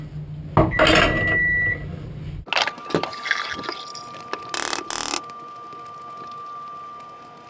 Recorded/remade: recorded